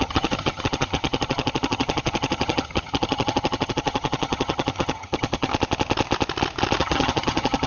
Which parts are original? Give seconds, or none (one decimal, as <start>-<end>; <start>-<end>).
5.5-6.8